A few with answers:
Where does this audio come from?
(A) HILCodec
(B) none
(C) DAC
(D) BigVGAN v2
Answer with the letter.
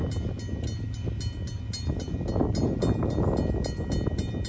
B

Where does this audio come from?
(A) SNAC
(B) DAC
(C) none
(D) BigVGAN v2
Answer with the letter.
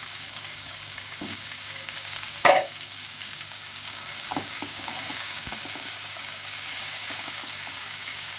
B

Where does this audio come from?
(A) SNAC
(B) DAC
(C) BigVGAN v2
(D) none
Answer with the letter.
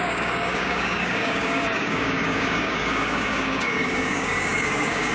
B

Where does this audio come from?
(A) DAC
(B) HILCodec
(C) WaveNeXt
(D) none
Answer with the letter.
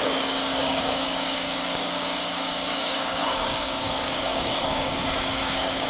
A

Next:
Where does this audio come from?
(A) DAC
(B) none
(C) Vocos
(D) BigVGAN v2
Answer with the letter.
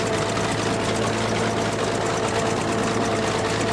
B